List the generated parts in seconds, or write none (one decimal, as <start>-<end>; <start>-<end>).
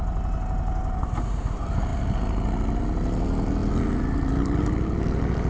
none